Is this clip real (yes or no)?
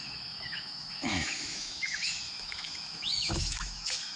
no